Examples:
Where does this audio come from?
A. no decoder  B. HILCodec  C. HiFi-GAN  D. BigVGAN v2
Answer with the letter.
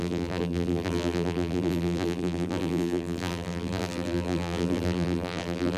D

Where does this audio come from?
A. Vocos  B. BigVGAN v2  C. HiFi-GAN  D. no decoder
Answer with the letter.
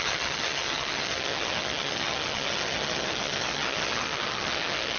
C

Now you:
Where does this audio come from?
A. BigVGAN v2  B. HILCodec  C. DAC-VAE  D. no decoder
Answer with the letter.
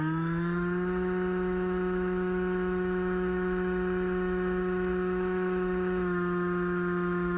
C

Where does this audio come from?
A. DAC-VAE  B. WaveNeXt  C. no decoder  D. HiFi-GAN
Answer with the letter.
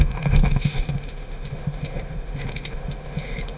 A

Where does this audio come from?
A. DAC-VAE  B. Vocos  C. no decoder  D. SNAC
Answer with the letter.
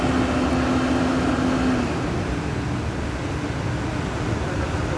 C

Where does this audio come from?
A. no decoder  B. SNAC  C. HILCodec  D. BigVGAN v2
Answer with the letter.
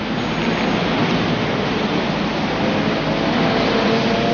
A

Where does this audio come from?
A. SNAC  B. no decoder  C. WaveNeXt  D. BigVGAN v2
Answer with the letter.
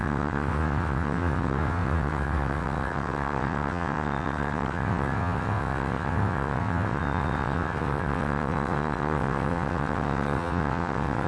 C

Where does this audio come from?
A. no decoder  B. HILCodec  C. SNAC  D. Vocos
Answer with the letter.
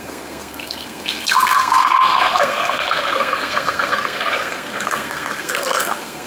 C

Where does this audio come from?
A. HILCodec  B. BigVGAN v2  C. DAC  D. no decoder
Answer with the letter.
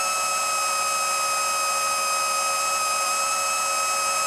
D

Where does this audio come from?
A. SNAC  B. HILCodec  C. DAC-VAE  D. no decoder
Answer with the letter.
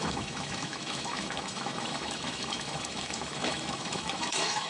C